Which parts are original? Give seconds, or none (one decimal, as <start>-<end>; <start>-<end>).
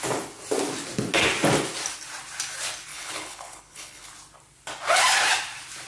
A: 0.0-2.9; 4.1-5.9